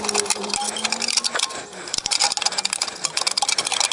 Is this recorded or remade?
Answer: recorded